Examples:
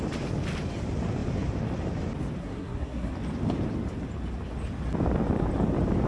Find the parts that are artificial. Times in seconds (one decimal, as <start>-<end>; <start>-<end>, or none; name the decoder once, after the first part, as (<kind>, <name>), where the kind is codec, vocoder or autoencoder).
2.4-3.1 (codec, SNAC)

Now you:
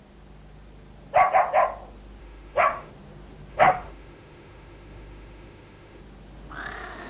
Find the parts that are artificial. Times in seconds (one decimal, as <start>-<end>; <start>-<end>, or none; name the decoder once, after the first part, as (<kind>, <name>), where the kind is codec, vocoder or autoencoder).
2.2-2.9 (autoencoder, DAC-VAE); 3.5-6.0

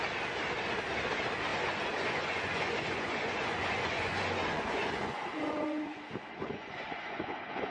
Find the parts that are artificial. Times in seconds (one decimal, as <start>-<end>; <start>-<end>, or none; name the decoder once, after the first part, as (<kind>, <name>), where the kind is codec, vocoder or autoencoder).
1.5-6.0 (vocoder, Vocos); 6.4-7.7

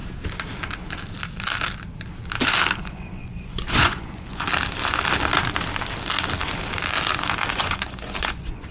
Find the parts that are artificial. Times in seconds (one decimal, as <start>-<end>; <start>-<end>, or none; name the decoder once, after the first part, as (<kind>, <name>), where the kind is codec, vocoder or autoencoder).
2.8-4.5 (vocoder, Vocos); 7.5-8.7

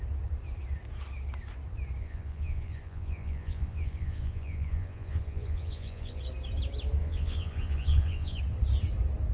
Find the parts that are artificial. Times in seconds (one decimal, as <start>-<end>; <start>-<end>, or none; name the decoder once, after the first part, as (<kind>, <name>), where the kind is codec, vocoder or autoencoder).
2.0-6.2 (vocoder, Vocos); 7.0-8.4

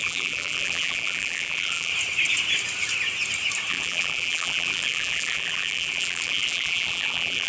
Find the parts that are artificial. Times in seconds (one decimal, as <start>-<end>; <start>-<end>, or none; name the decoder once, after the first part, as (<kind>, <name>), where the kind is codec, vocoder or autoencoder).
0.0-1.9 (vocoder, BigVGAN v2); 3.7-7.5

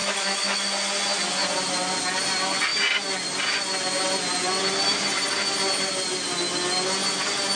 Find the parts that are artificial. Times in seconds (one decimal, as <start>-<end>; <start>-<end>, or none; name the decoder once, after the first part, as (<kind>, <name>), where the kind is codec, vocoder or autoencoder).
0.0-0.7 (autoencoder, DAC-VAE)